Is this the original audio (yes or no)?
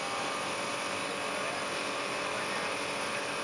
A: yes